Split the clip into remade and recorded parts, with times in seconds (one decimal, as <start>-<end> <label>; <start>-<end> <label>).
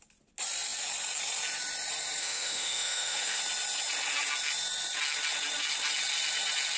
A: 0.0-2.2 recorded; 2.2-3.4 remade; 3.4-6.8 recorded